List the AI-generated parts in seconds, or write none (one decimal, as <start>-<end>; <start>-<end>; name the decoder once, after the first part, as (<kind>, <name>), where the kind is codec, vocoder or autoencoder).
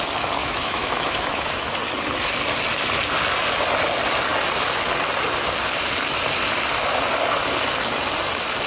0.4-1.7 (autoencoder, DAC-VAE)